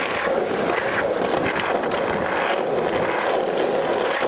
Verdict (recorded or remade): recorded